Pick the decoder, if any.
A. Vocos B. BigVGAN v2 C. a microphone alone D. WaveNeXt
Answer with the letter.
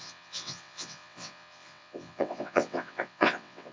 D